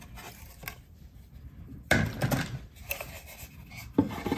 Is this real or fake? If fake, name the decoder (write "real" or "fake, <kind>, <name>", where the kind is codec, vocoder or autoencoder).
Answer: real